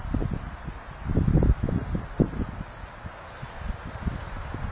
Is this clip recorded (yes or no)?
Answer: yes